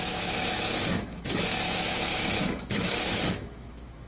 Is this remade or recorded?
remade